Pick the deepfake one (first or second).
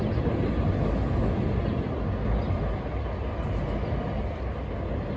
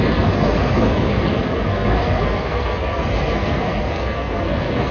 second